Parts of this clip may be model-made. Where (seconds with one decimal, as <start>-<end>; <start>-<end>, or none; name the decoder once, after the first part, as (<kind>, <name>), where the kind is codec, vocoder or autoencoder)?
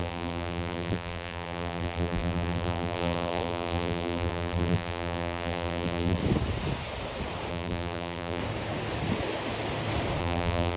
0.0-6.2 (vocoder, BigVGAN v2); 7.5-8.4; 10.2-10.8